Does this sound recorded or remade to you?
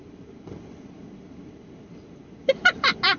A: recorded